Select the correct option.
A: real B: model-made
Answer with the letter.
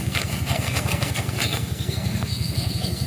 B